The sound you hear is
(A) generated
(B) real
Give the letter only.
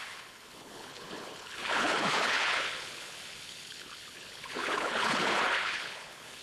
A